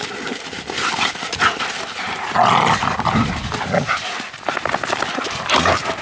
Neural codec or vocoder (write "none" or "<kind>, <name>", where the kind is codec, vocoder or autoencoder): none